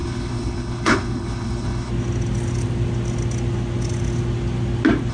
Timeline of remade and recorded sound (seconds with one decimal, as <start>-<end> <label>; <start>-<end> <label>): 0.0-1.9 remade; 1.9-5.1 recorded